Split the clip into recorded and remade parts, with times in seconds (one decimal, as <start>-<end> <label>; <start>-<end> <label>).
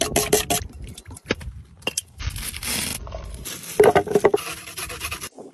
0.0-2.9 recorded; 2.9-5.5 remade